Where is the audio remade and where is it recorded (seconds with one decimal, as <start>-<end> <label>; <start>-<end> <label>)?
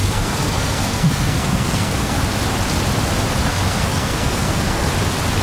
0.0-2.2 remade; 2.2-3.4 recorded; 3.4-4.9 remade; 4.9-5.4 recorded